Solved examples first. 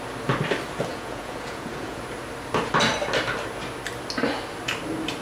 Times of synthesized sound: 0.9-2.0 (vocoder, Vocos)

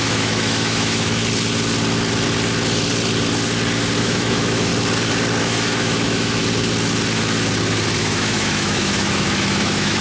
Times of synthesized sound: 0.0-1.2 (autoencoder, DAC-VAE); 4.0-4.7; 5.4-6.4; 8.0-10.0

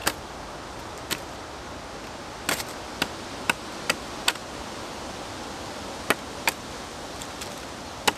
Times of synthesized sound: 4.4-5.1 (vocoder, BigVGAN v2)

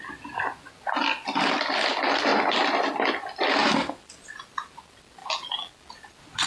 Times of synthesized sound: 5.2-5.7 (vocoder, BigVGAN v2)

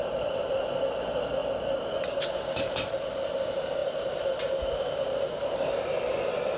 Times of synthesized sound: 0.0-0.8 (vocoder, BigVGAN v2); 3.8-4.5

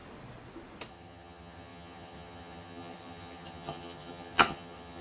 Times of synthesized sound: 0.9-5.0 (vocoder, HiFi-GAN)

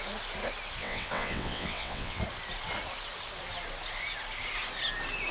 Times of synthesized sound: 0.8-2.2 (vocoder, WaveNeXt)